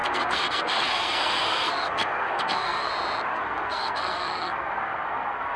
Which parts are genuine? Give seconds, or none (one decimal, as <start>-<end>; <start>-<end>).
2.9-3.3

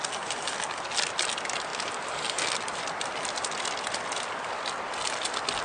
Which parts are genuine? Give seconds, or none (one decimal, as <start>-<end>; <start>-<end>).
0.0-5.6